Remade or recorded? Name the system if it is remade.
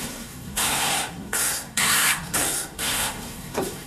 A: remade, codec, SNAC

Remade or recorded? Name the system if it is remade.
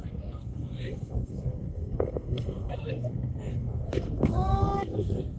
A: remade, codec, SNAC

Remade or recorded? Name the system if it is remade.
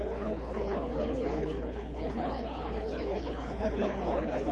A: remade, codec, HILCodec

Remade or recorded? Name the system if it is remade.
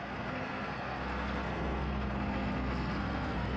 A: remade, codec, SNAC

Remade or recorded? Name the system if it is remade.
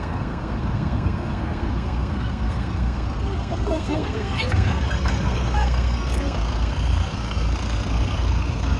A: remade, codec, SNAC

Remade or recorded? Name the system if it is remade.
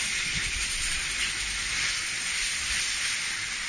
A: recorded